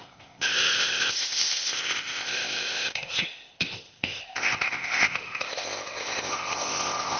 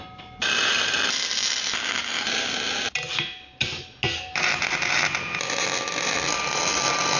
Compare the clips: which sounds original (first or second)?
second